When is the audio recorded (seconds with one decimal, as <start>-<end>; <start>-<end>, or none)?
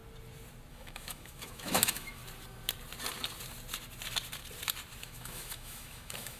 0.0-0.7; 2.2-5.0